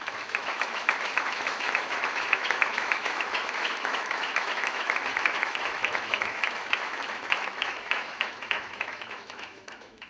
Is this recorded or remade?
remade